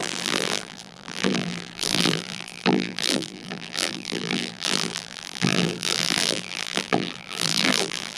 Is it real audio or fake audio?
fake